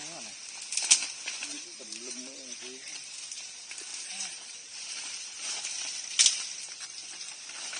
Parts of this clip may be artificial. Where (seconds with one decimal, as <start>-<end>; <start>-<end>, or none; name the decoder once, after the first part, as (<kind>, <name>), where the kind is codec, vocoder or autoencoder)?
1.5-2.6 (vocoder, BigVGAN v2); 3.9-5.6